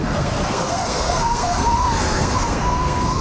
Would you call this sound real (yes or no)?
no